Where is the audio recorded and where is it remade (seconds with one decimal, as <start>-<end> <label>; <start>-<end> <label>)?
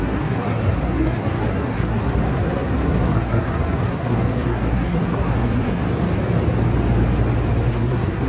0.0-5.8 remade; 5.8-7.7 recorded; 7.7-8.3 remade